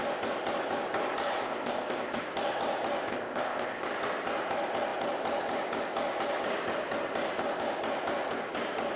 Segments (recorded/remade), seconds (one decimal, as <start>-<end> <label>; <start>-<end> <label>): 0.0-1.4 recorded; 1.4-2.2 remade; 2.2-3.1 recorded; 3.1-3.9 remade; 3.9-9.0 recorded